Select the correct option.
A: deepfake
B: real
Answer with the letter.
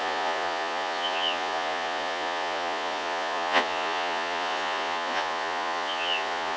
A